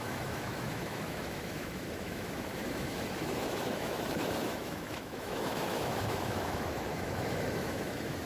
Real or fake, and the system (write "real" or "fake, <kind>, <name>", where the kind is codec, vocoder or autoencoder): fake, autoencoder, DAC-VAE